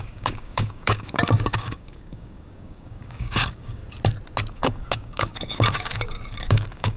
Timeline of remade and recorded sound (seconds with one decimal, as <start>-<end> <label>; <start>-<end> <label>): 0.0-3.8 remade; 3.8-4.5 recorded; 4.5-7.0 remade